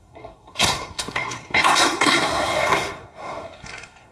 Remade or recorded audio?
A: remade